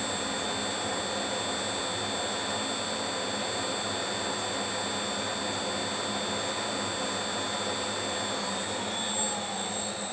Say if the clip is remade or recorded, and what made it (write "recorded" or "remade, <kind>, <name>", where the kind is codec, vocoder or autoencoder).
recorded